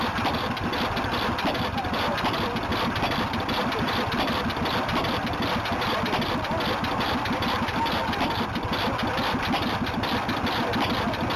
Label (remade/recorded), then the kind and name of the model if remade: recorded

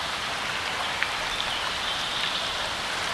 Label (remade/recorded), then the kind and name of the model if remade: recorded